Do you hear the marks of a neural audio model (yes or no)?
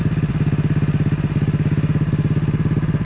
no